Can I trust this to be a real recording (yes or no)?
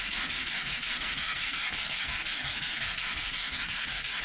no